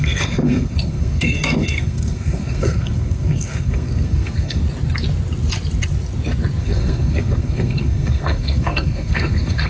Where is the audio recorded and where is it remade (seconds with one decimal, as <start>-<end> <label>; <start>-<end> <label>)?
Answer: 0.0-4.6 remade; 4.6-6.6 recorded; 6.6-9.7 remade